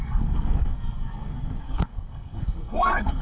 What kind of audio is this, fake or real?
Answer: fake